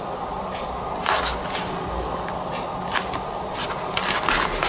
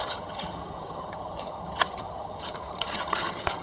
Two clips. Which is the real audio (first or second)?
first